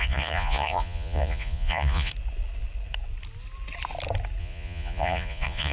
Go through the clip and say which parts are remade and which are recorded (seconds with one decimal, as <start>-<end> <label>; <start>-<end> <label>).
0.0-2.1 remade; 2.1-4.4 recorded; 4.4-5.7 remade